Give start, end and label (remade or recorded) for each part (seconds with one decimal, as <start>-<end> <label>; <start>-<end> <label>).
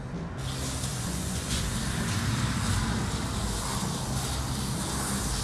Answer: 0.0-0.9 recorded; 0.9-1.6 remade; 1.6-5.4 recorded